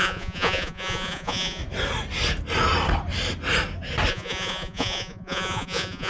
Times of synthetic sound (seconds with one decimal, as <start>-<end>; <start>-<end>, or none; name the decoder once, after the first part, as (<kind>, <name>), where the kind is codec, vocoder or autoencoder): 0.0-1.6 (vocoder, Vocos); 4.1-6.1